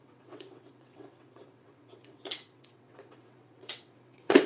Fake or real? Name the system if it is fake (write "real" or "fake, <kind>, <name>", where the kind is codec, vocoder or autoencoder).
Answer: fake, vocoder, WaveNeXt